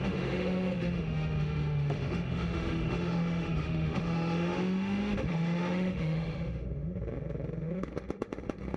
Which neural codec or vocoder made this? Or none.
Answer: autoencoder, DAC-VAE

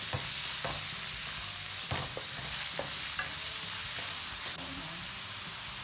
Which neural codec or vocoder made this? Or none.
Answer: none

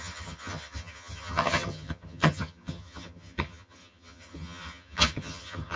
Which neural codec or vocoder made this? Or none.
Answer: vocoder, HiFi-GAN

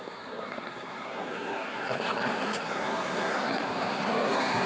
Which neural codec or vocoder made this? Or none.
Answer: codec, SNAC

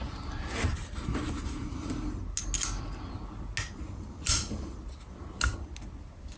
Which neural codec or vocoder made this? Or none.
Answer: none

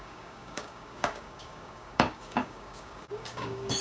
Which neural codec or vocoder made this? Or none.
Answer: codec, DAC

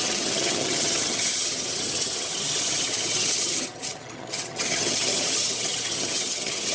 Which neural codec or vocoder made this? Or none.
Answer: vocoder, HiFi-GAN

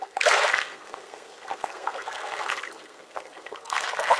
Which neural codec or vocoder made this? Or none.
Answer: codec, SNAC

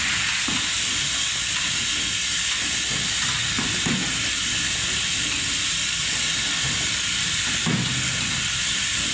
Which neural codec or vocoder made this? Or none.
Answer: none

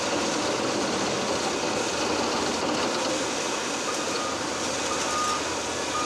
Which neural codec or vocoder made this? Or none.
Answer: none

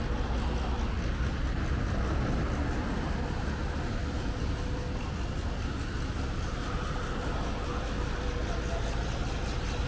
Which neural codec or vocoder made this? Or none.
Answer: none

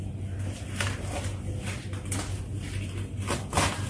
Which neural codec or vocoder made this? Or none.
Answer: none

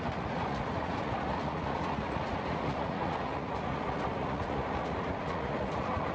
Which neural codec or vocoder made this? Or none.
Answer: vocoder, Vocos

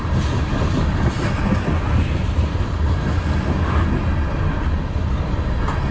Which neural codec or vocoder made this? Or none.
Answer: none